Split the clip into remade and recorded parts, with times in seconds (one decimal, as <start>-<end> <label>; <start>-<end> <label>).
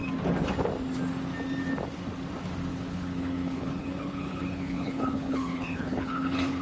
0.0-2.7 recorded; 2.7-6.6 remade